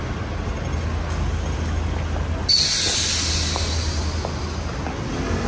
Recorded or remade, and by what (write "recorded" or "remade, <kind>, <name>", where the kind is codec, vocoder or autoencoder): recorded